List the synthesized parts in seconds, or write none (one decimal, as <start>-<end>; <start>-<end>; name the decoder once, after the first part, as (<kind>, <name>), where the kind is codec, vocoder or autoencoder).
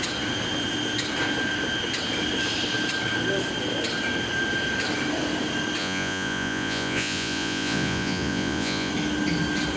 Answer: 5.8-8.9 (vocoder, Vocos)